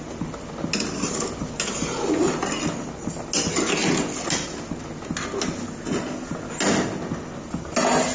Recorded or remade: recorded